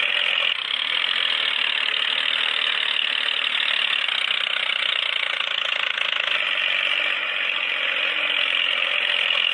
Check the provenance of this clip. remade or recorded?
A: recorded